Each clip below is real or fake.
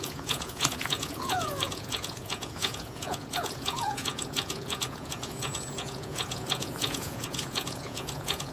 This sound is fake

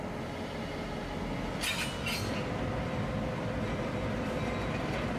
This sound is real